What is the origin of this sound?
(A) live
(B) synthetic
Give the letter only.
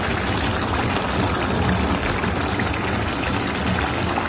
A